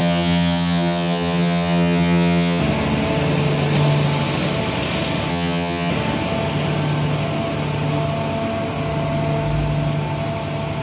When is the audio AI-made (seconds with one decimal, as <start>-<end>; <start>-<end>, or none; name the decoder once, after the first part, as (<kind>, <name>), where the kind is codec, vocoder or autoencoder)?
0.0-2.6 (vocoder, HiFi-GAN); 5.3-5.9